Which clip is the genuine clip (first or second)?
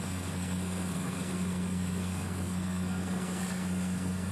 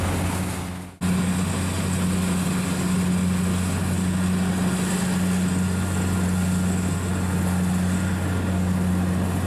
second